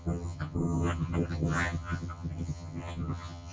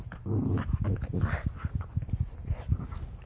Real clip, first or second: second